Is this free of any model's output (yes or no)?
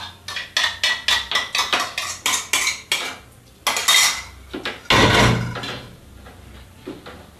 yes